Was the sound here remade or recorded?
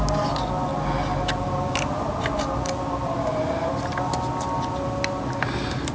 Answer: recorded